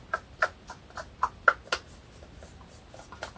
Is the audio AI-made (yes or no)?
no